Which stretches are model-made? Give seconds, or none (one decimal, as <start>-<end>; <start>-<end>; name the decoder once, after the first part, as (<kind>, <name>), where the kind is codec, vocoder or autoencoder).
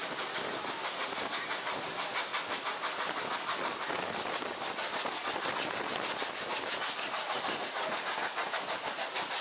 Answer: none